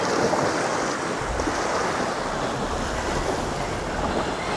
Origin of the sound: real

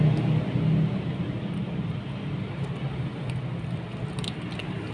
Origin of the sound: real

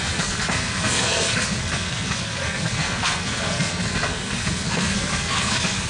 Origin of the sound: fake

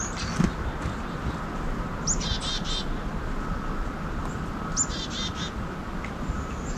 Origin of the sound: real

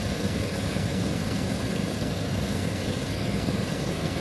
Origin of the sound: fake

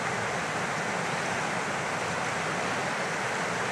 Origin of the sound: real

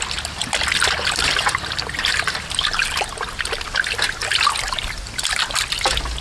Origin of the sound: real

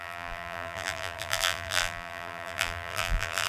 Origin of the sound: fake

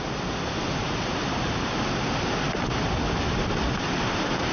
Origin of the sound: real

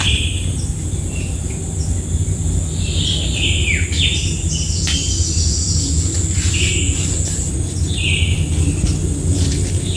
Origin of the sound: real